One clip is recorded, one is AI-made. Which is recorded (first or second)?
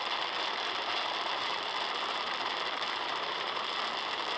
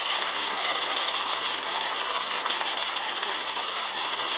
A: first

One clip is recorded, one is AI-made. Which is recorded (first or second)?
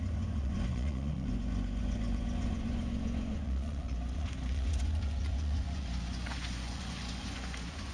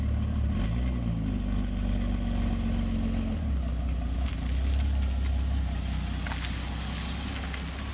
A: second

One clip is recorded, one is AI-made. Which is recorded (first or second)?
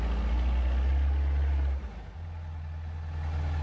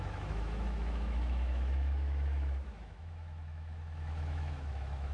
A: first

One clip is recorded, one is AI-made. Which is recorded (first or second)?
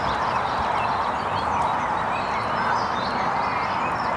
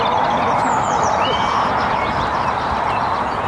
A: first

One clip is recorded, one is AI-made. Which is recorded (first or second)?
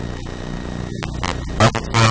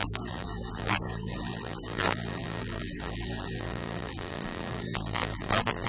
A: first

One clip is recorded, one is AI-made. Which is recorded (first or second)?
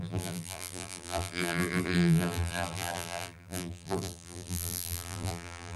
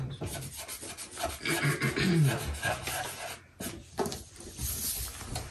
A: second